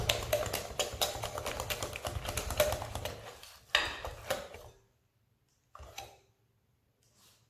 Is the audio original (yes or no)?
yes